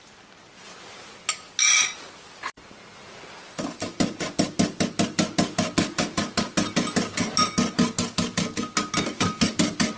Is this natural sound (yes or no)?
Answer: yes